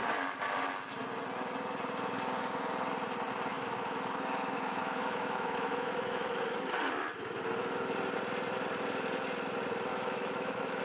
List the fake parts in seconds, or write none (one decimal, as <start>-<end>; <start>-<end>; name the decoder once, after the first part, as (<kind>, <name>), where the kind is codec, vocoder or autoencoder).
3.5-6.7 (autoencoder, DAC-VAE); 9.9-10.8